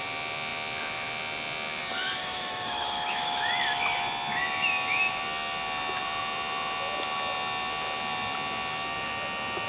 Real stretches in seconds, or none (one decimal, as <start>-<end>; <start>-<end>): 0.0-2.2; 3.6-9.7

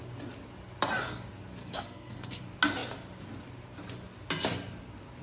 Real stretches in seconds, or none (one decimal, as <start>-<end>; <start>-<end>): 0.0-1.6; 2.4-5.2

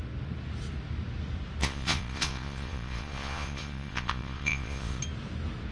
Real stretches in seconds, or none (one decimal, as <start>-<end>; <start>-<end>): 0.0-1.6; 5.0-5.7

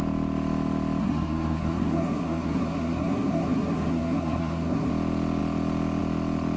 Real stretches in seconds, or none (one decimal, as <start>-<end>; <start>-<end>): 0.0-1.0; 4.9-6.6

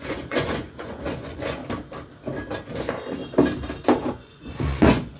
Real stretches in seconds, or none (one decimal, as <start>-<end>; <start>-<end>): 1.6-2.7; 3.2-4.1

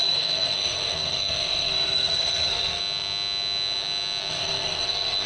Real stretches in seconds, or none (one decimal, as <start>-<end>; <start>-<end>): 2.8-4.3

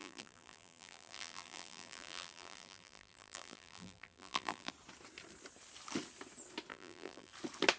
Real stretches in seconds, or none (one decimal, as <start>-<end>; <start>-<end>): 4.7-6.7; 7.3-7.8